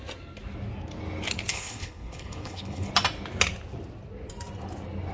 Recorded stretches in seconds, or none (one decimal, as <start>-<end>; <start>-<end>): 0.0-1.5; 2.9-5.1